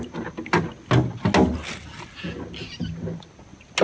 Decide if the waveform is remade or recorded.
recorded